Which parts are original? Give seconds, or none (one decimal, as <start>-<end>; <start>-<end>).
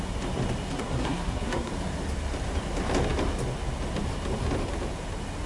0.0-0.7; 1.7-5.5